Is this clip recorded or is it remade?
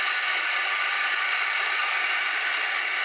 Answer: recorded